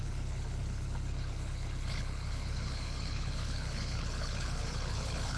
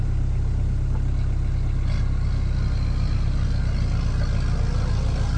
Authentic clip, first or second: second